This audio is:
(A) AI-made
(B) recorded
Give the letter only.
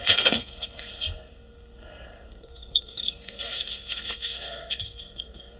A